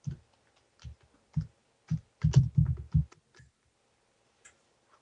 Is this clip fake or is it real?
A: real